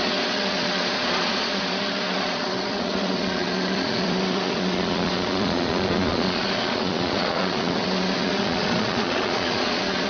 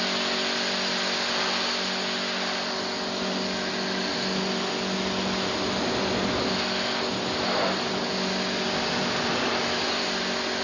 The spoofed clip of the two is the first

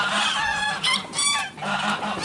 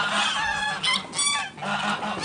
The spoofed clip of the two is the first